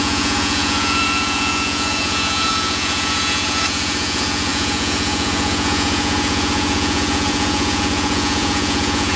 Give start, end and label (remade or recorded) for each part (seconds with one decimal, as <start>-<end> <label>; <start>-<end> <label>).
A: 0.0-9.2 remade